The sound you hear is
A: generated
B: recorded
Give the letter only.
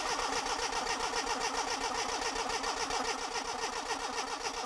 B